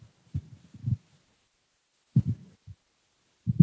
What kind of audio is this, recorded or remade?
recorded